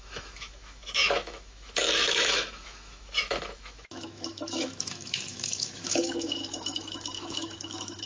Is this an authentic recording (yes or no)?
no